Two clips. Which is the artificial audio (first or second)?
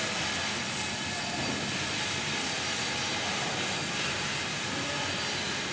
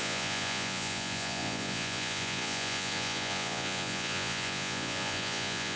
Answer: second